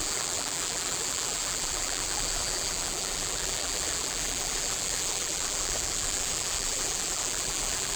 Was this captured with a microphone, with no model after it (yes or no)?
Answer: no